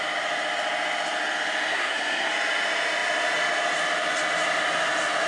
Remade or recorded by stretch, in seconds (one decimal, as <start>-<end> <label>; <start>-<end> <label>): 0.0-1.7 recorded; 1.7-2.3 remade; 2.3-5.3 recorded